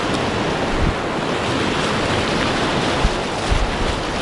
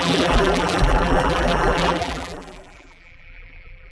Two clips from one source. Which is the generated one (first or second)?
second